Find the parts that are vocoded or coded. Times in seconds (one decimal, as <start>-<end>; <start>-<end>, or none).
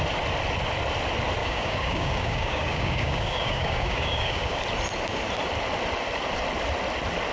1.4-4.6